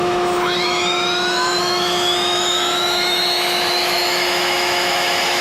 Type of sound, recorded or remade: remade